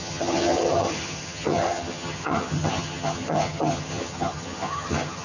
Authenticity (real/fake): fake